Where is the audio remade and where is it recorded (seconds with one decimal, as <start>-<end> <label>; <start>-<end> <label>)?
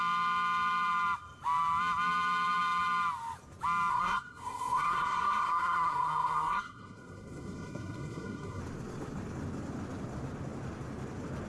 0.0-3.9 recorded; 3.9-8.6 remade; 8.6-11.5 recorded